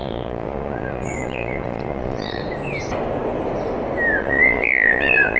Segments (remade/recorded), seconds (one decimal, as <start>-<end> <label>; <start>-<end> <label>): 0.0-2.4 remade; 2.4-4.2 recorded; 4.2-5.4 remade